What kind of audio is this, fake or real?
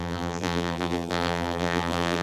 fake